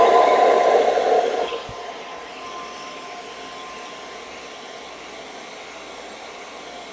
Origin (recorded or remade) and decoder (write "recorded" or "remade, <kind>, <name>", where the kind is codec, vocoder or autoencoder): recorded